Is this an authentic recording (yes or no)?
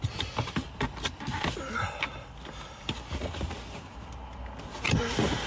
yes